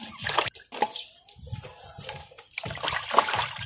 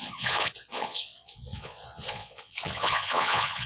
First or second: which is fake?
second